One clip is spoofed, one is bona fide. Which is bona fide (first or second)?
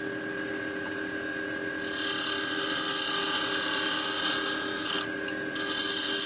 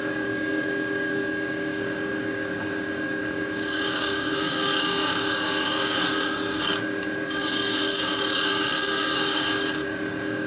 first